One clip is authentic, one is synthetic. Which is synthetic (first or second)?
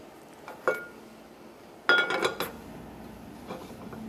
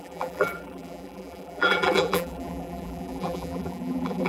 second